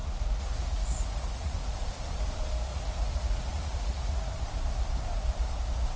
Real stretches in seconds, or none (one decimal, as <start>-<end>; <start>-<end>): 1.7-2.7; 4.3-6.0